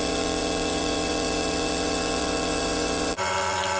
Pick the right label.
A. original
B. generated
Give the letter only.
B